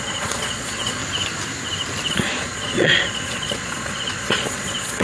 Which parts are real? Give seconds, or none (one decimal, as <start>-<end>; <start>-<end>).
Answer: 1.0-2.1